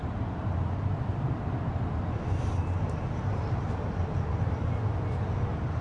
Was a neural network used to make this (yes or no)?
no